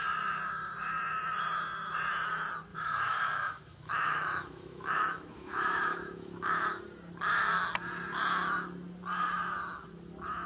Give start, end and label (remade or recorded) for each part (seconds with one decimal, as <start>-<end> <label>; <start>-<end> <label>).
0.0-2.7 recorded; 2.7-6.6 remade; 6.6-10.5 recorded